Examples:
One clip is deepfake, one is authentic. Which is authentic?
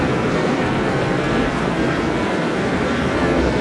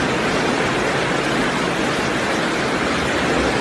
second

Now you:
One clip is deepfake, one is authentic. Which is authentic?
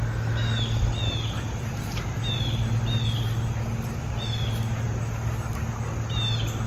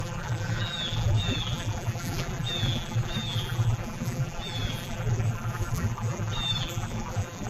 first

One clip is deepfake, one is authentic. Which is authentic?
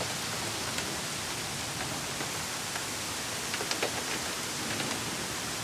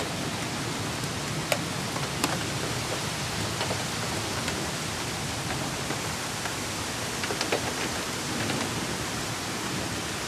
first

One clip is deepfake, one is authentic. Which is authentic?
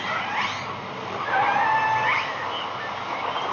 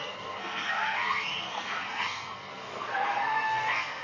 first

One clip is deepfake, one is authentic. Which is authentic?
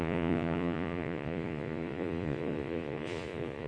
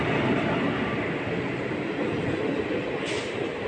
second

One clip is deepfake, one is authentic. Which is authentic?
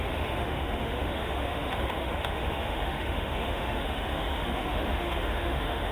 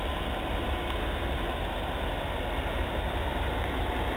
second